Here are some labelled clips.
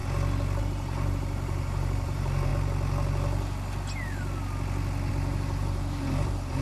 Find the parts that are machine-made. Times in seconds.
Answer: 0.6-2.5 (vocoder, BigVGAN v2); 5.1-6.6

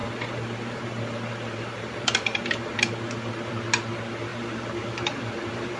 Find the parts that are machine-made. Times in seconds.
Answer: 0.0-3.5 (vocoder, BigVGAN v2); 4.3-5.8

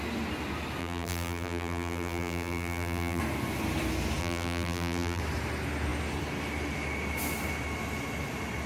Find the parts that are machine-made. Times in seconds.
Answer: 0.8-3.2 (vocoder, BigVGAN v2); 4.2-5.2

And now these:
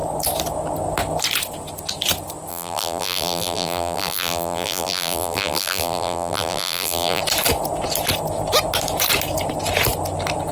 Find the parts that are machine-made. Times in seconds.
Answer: 2.5-7.2 (vocoder, BigVGAN v2)

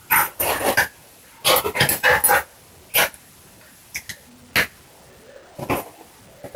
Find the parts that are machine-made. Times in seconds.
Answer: none

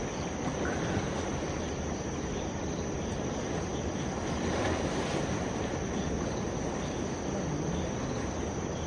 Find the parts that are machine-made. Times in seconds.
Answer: none

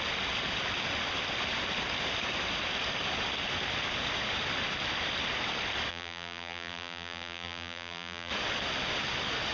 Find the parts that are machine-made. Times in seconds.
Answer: 5.9-8.3 (vocoder, BigVGAN v2)